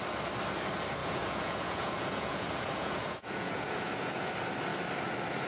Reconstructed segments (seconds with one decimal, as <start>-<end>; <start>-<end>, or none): 1.0-4.3